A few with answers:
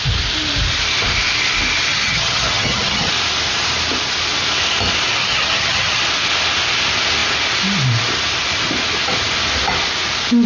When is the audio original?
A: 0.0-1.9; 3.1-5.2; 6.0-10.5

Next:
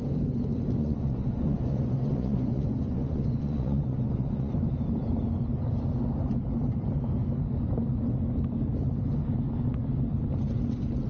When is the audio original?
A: 0.0-0.8; 4.5-11.1